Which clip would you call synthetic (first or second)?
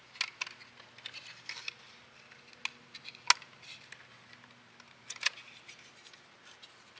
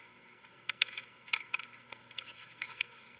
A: second